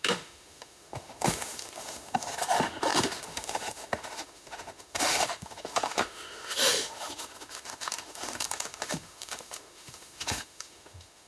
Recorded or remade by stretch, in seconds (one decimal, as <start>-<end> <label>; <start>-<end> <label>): 0.0-11.3 remade